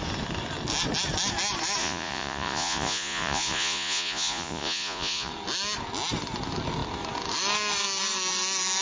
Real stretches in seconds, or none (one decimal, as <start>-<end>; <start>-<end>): 0.0-1.8; 5.3-8.8